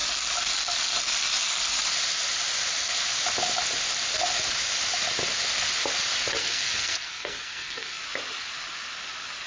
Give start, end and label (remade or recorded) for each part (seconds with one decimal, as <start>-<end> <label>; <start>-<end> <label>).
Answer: 0.0-6.4 recorded; 6.4-8.0 remade; 8.0-9.5 recorded